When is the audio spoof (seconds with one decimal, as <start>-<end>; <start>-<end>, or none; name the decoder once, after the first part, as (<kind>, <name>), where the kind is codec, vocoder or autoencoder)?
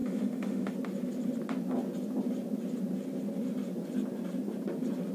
0.0-0.7 (autoencoder, DAC-VAE)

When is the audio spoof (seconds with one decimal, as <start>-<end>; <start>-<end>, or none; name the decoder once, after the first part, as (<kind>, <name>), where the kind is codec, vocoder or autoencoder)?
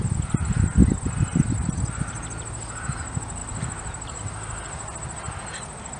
3.4-4.2 (vocoder, BigVGAN v2)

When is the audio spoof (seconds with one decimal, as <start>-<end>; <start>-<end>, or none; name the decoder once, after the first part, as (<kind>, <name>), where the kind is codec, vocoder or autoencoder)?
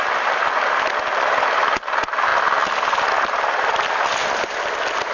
none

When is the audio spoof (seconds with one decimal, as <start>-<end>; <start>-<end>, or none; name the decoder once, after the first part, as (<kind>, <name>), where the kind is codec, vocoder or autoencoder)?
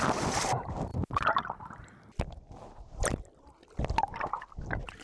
none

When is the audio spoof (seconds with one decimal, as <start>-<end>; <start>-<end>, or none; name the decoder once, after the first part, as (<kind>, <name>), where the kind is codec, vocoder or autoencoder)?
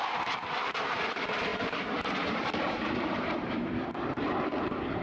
0.0-5.0 (vocoder, BigVGAN v2)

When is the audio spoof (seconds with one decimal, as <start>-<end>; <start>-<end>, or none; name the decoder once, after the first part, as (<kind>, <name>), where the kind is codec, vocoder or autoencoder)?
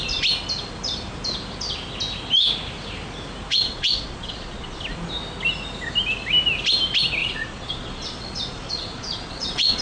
3.5-4.8 (vocoder, Vocos); 7.2-9.8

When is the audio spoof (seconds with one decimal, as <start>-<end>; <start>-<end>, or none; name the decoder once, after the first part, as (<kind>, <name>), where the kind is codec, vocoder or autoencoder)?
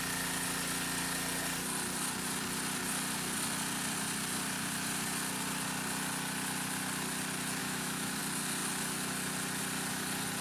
7.6-8.2 (autoencoder, DAC-VAE)